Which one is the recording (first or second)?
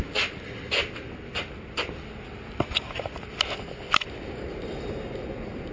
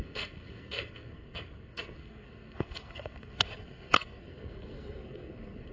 first